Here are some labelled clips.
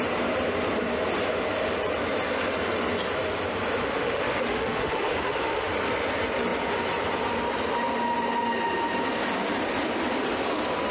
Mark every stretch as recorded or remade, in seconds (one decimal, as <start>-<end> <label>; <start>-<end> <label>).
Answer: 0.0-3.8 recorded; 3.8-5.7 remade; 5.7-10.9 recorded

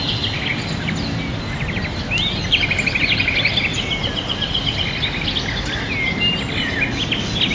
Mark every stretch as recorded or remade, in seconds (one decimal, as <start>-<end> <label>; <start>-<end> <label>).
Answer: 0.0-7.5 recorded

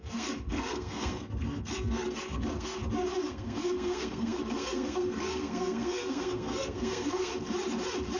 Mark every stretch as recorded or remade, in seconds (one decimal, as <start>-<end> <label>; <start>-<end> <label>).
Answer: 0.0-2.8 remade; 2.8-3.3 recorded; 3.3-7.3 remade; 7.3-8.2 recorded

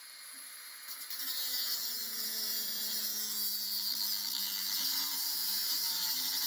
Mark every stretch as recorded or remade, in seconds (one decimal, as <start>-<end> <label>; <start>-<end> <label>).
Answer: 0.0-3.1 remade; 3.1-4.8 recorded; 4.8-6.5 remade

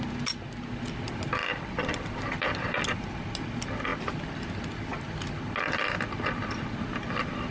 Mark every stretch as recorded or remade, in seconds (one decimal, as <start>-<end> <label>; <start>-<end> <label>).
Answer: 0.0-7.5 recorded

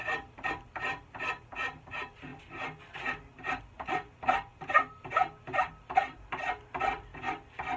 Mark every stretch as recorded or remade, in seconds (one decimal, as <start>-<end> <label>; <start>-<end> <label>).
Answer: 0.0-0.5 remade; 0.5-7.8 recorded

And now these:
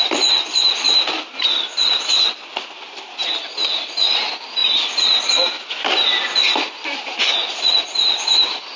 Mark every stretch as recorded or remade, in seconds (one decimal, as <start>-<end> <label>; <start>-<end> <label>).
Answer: 0.0-8.8 recorded